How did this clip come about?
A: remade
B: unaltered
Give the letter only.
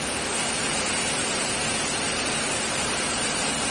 A